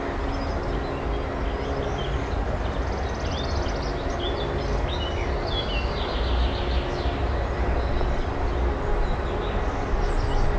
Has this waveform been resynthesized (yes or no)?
no